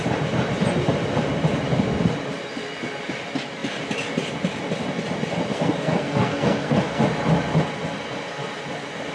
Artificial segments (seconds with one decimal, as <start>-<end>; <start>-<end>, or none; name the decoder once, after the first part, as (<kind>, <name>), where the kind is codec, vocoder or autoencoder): 5.5-7.0 (codec, SNAC)